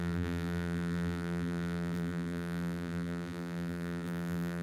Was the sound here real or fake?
fake